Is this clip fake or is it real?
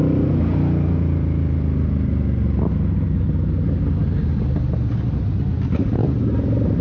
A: real